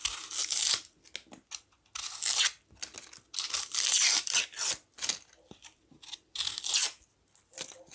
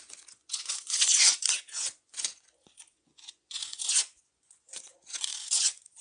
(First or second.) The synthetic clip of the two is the second